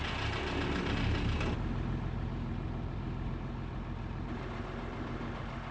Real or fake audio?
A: real